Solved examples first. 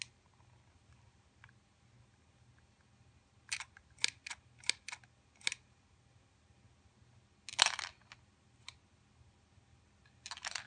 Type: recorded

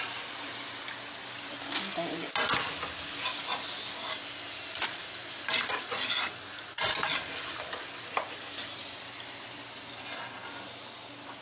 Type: recorded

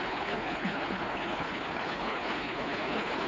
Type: remade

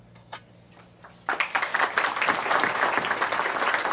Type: recorded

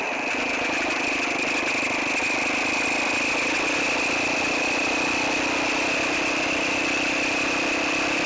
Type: recorded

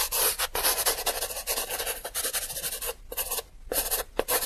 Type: recorded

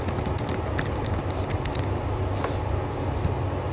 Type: recorded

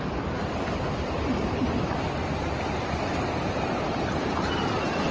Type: recorded